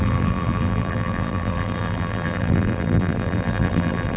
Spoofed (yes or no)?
yes